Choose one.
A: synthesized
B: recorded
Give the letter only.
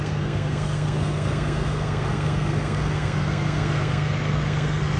A